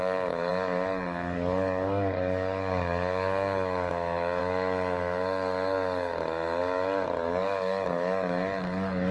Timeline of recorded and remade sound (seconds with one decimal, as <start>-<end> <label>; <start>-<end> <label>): 0.0-9.1 remade